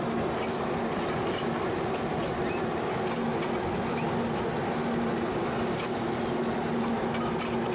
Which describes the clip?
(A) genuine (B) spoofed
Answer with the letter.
A